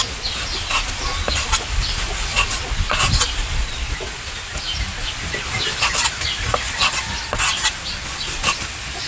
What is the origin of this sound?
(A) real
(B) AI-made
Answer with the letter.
A